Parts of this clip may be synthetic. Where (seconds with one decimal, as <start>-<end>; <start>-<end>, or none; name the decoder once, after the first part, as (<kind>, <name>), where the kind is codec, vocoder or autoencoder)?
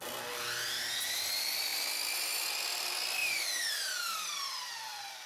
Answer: none